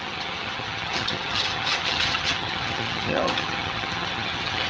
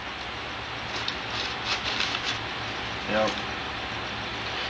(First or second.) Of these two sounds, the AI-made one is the first